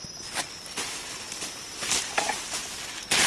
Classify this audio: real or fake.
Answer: real